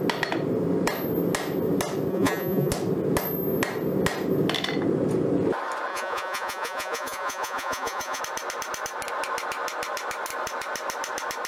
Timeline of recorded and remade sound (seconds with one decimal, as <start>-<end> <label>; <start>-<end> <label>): 0.0-2.1 recorded; 2.1-2.7 remade; 2.7-5.9 recorded; 5.9-8.2 remade; 8.2-11.5 recorded